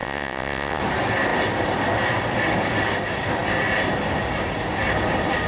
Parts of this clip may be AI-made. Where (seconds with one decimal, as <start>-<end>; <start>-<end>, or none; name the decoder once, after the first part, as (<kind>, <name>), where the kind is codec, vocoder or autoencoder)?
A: 0.0-0.8 (vocoder, WaveNeXt)